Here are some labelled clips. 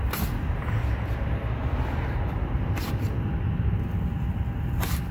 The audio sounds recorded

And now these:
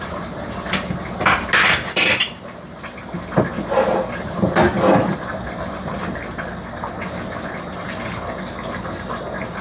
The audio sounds recorded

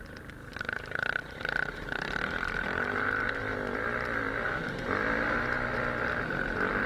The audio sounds recorded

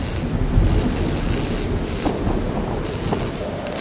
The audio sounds recorded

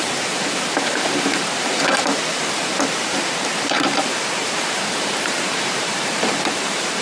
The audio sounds remade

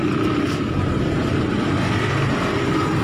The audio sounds recorded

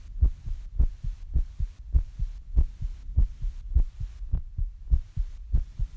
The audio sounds remade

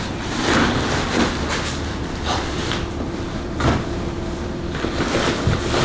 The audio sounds remade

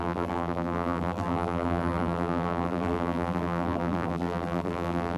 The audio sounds remade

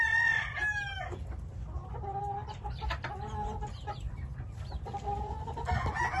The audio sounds recorded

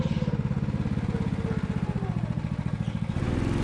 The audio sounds recorded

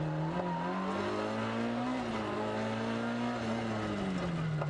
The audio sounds recorded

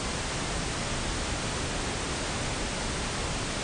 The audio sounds recorded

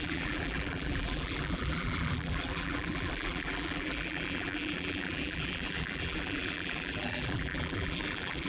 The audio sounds remade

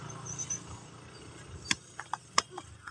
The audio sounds remade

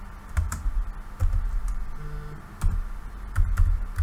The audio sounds recorded